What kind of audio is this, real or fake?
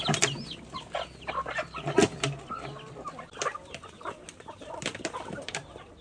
real